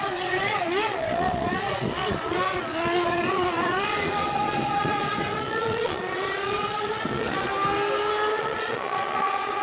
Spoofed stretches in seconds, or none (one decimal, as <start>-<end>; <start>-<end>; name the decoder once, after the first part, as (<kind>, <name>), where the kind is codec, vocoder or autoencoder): 0.0-7.5 (vocoder, Vocos); 8.3-9.6